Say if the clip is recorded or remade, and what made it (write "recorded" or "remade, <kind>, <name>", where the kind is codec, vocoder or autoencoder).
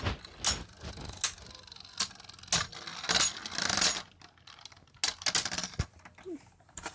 recorded